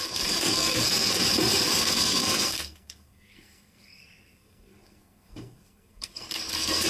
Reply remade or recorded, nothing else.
remade